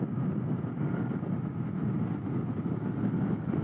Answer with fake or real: real